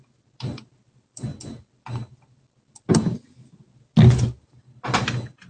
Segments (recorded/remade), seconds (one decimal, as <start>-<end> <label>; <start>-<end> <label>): 0.0-1.3 remade; 1.3-4.6 recorded; 4.6-5.5 remade